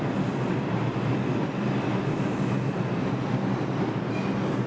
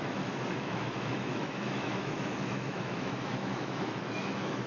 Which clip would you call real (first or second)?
first